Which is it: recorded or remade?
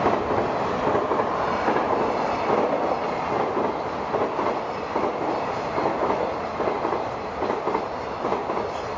recorded